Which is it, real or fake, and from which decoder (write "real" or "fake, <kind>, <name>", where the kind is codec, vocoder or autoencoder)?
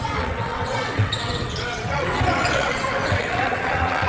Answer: fake, vocoder, WaveNeXt